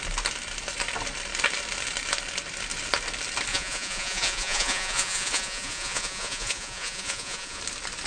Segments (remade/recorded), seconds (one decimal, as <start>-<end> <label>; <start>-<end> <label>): 0.0-3.5 recorded; 3.5-7.6 remade; 7.6-8.1 recorded